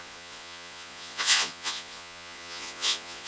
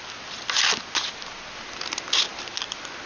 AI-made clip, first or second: first